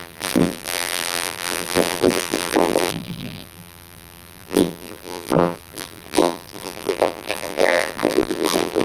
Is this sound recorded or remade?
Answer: remade